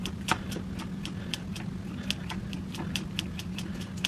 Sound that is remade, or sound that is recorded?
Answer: recorded